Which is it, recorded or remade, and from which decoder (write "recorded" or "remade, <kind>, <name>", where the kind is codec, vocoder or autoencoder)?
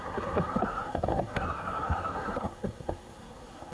remade, codec, SNAC